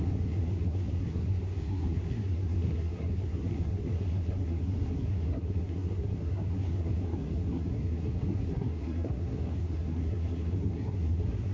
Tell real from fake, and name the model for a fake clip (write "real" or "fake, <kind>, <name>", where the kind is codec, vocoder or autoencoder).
fake, codec, SNAC